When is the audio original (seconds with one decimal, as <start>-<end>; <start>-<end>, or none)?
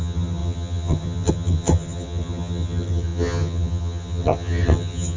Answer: none